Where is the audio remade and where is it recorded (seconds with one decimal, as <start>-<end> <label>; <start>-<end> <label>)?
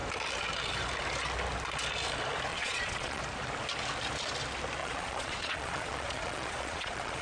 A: 0.0-2.5 recorded; 2.5-3.2 remade; 3.2-4.8 recorded; 4.8-7.2 remade